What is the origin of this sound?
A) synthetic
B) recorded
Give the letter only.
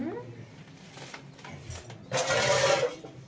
B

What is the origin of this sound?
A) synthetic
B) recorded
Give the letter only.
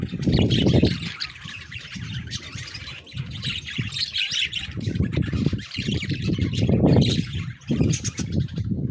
A